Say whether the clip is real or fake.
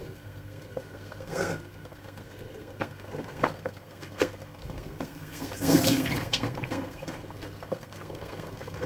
fake